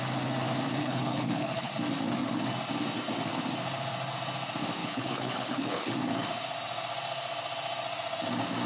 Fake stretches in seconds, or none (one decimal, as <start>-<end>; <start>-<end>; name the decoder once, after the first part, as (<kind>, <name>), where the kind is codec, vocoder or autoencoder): 0.8-1.7 (codec, HILCodec); 4.8-5.9